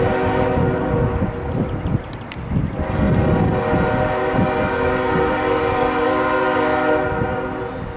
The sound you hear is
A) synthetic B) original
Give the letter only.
B